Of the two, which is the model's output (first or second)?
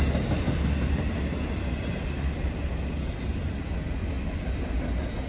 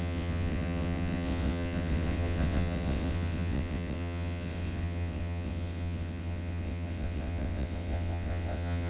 second